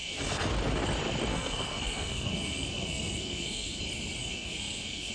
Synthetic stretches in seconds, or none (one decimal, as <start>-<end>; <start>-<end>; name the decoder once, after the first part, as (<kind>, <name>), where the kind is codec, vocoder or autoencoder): 0.0-0.5 (codec, SNAC); 1.3-3.8; 4.2-5.1